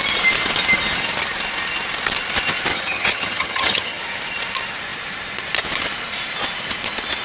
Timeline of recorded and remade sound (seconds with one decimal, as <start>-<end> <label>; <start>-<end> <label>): 0.0-2.7 recorded; 2.7-4.0 remade; 4.0-7.2 recorded